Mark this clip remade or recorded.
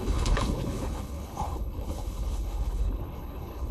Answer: remade